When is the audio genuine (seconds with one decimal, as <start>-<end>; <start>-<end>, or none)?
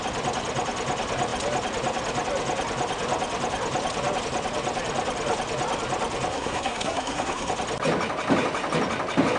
0.0-6.3; 7.5-9.4